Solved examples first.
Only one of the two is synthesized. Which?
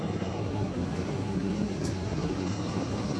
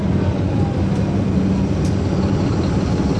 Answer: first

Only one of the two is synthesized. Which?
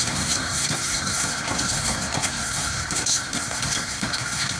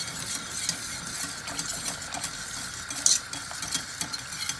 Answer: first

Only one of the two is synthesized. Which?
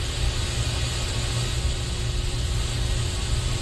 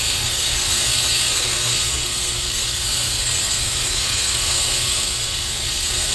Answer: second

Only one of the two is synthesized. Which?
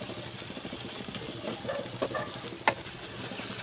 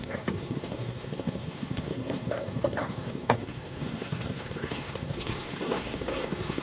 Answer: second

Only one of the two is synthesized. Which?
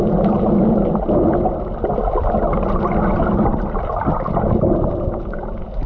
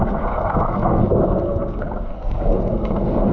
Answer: second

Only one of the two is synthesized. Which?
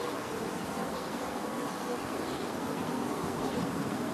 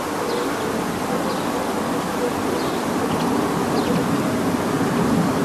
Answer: first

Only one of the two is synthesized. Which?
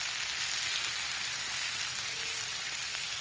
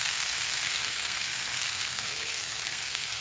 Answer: second